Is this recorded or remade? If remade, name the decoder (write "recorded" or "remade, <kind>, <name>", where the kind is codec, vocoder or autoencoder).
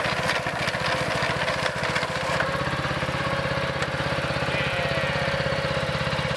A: recorded